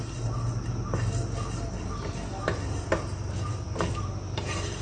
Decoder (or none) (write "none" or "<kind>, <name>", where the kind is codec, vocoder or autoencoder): none